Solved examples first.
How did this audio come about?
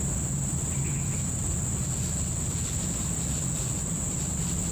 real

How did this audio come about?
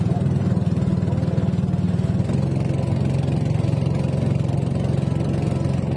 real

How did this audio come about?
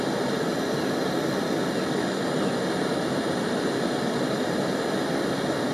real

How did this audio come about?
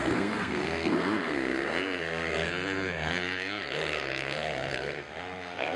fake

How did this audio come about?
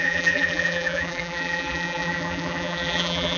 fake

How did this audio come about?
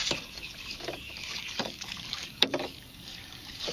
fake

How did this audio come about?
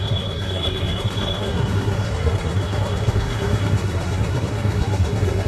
fake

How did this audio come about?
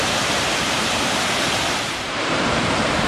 fake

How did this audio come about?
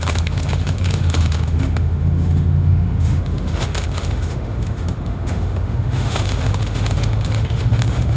fake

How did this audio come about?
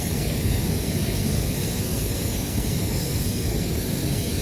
fake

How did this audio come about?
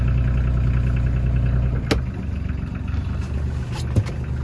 real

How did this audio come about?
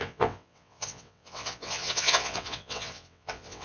fake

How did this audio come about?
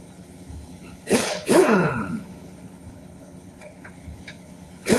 fake